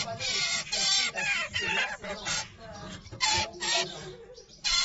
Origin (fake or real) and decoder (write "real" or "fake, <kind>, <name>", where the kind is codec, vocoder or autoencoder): real